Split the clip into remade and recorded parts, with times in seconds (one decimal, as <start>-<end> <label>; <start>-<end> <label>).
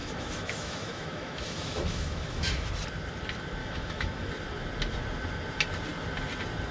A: 0.0-2.7 remade; 2.7-3.6 recorded; 3.6-4.3 remade; 4.3-6.7 recorded